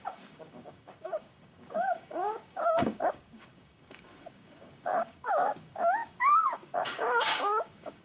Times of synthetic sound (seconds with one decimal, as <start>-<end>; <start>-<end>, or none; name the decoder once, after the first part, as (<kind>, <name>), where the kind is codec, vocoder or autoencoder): 0.0-8.0 (codec, DAC)